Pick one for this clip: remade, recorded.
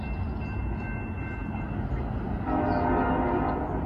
recorded